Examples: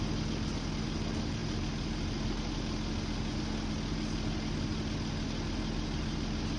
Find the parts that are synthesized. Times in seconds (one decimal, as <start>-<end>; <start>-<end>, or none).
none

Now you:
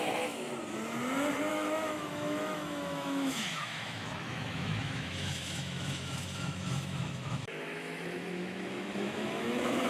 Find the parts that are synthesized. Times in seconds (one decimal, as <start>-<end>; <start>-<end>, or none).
0.0-0.5; 1.5-9.9

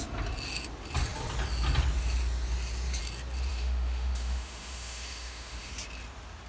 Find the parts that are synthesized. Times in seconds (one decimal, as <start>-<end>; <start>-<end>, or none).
3.5-5.7

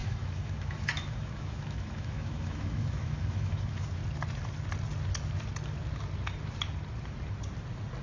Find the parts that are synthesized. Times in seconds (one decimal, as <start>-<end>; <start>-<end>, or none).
0.0-4.0

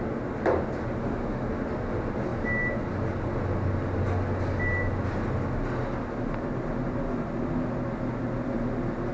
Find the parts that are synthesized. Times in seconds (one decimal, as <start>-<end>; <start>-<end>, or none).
1.0-1.5

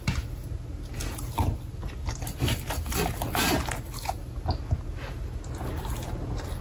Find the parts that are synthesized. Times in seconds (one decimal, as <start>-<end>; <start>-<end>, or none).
none

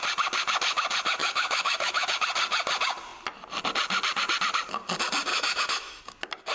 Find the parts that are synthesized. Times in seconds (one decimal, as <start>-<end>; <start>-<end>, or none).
1.2-2.1; 5.3-6.0

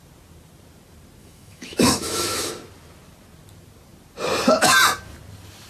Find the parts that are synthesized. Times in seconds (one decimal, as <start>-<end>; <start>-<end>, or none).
1.2-2.5